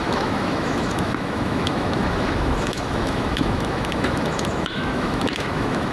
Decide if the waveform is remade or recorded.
remade